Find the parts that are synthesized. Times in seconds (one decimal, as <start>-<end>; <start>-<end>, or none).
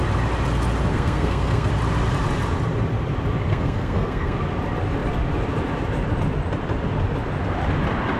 0.9-1.7; 3.5-4.4